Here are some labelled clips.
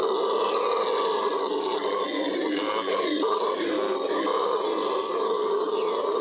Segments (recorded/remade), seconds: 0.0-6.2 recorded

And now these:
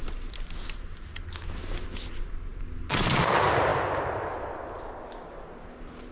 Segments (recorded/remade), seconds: 0.0-6.1 recorded

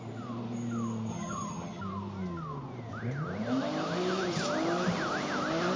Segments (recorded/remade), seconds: 0.0-1.1 recorded; 1.1-1.8 remade; 1.8-5.8 recorded

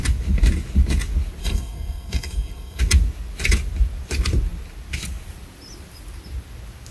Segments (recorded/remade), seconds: 0.0-1.4 recorded; 1.4-2.8 remade; 2.8-6.9 recorded

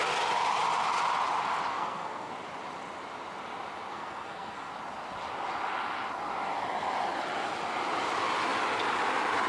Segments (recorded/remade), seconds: 0.0-1.7 recorded; 1.7-2.3 remade; 2.3-3.9 recorded; 3.9-4.7 remade; 4.7-9.5 recorded